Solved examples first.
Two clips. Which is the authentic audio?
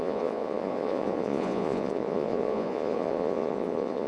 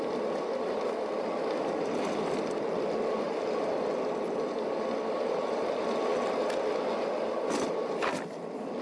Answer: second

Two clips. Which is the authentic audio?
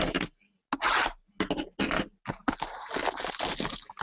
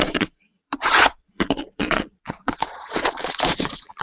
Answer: first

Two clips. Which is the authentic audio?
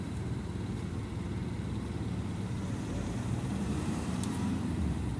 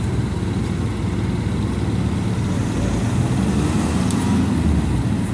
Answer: second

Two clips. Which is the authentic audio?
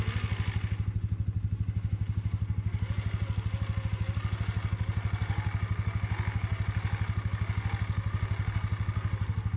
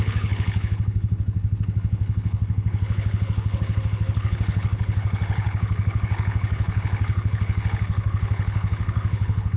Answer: first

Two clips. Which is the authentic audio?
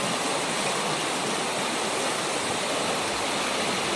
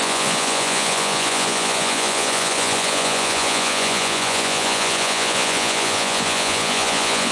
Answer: first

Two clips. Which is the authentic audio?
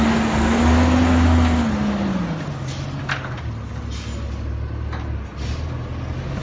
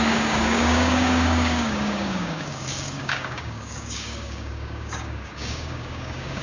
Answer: first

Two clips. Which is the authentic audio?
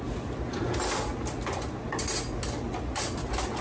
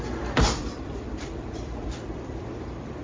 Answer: first